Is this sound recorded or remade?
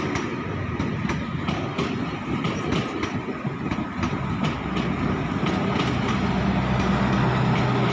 recorded